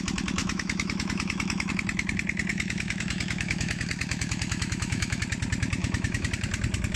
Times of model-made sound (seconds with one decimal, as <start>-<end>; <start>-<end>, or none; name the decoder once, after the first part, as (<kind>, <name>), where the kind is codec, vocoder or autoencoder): 0.4-1.7 (autoencoder, DAC-VAE); 2.5-5.2; 5.8-6.3